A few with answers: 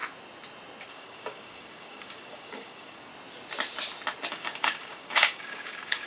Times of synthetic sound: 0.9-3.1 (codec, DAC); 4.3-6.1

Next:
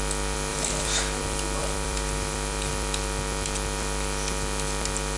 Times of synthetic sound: 0.5-1.2 (vocoder, BigVGAN v2); 1.6-2.7

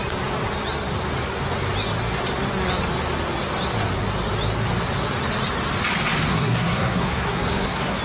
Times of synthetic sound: 6.3-8.0 (codec, SNAC)

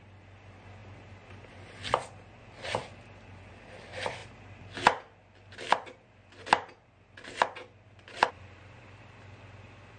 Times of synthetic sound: none

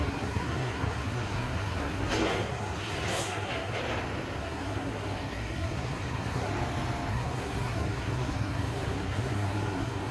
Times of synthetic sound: 0.0-3.8 (codec, SNAC); 4.4-6.5; 7.1-10.1

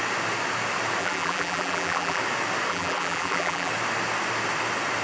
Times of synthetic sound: 1.0-2.2 (vocoder, BigVGAN v2); 2.7-3.7